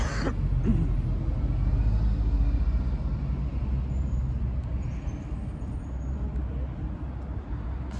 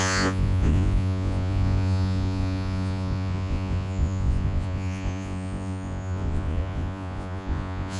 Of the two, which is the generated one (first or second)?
second